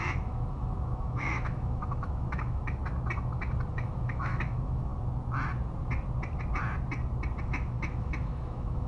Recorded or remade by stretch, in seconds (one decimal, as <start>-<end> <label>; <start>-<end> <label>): 0.0-2.8 remade; 2.8-3.7 recorded; 3.7-4.9 remade; 4.9-7.4 recorded; 7.4-8.9 remade